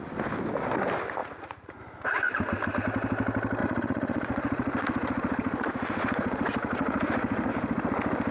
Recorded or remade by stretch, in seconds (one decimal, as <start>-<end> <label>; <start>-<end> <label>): 0.0-1.2 recorded; 1.2-1.8 remade; 1.8-3.6 recorded; 3.6-7.5 remade; 7.5-8.3 recorded